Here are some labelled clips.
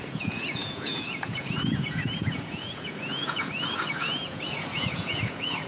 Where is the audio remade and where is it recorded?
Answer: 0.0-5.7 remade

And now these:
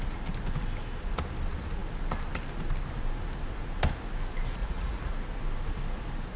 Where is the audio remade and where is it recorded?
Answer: 0.0-4.6 recorded; 4.6-5.1 remade; 5.1-6.4 recorded

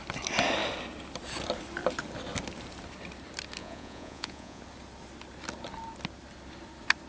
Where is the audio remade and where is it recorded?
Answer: 0.0-3.6 recorded; 3.6-4.6 remade; 4.6-7.1 recorded